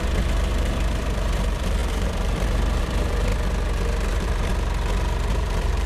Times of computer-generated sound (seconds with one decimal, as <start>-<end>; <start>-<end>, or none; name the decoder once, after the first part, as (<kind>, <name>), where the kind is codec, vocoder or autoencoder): 0.0-3.3 (vocoder, BigVGAN v2); 4.1-4.5; 5.3-5.9